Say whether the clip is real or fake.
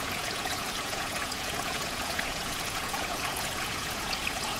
fake